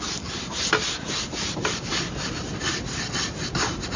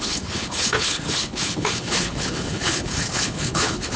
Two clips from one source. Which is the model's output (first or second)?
second